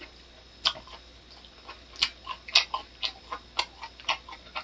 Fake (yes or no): no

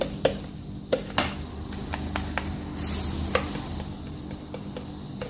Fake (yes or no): no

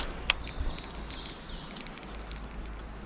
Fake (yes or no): no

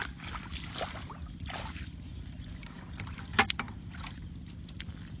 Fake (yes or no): no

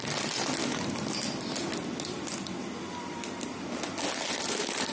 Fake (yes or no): no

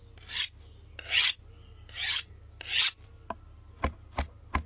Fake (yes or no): no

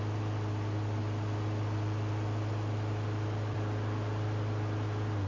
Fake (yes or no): no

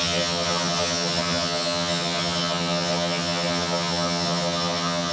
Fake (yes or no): yes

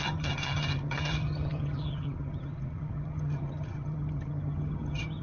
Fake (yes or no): yes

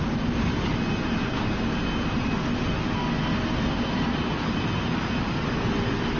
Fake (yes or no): no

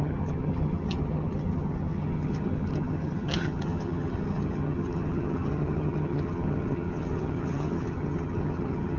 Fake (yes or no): yes